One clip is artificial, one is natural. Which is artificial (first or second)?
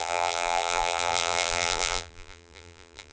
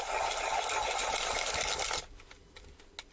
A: first